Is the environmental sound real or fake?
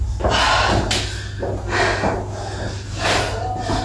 real